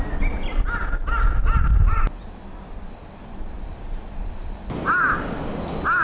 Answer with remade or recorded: recorded